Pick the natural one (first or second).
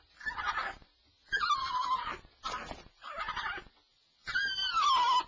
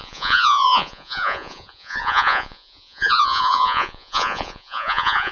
first